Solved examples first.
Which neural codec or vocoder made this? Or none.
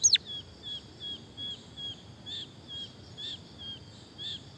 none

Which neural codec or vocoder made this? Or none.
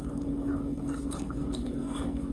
codec, SNAC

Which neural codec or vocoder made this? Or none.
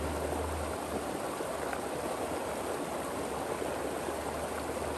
none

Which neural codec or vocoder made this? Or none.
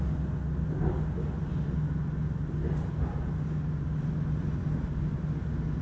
none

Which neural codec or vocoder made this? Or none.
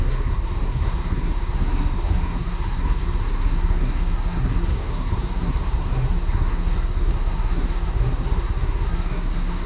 codec, SNAC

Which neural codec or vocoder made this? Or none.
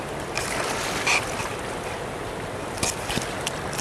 none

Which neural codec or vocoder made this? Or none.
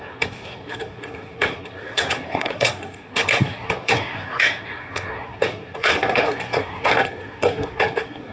codec, SNAC